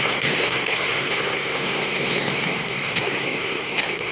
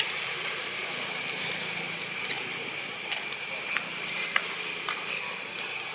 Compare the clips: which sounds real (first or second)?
second